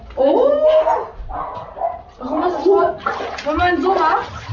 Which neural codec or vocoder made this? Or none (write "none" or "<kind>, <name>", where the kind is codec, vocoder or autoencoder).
none